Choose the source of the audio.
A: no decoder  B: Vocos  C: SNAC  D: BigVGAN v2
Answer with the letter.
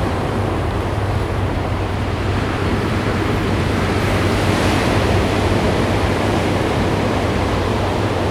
D